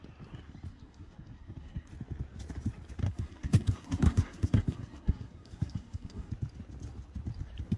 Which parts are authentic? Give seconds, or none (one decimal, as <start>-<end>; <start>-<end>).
0.0-0.7; 1.9-3.0; 6.3-7.8